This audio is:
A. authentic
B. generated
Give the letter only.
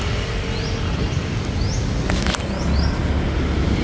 A